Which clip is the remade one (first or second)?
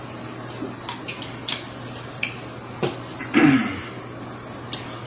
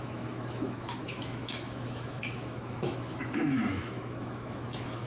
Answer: second